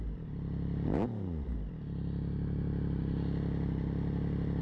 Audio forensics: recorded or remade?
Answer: recorded